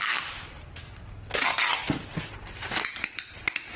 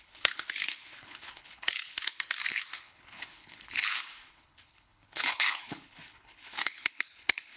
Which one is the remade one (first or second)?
second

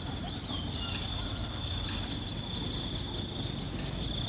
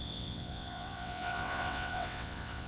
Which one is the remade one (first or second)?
second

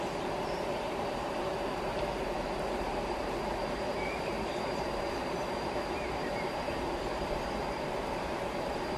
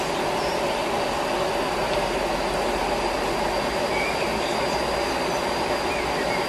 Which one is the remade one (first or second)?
first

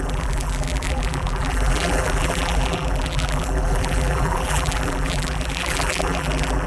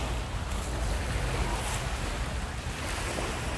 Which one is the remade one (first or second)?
first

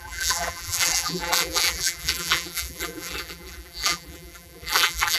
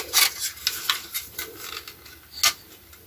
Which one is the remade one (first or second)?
first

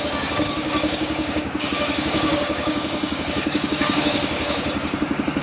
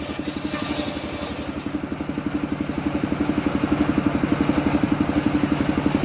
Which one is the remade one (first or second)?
first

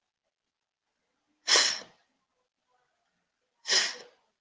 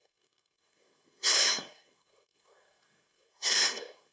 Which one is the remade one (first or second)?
second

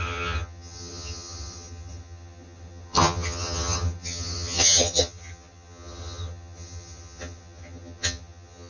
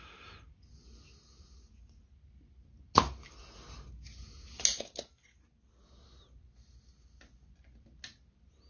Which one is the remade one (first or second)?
first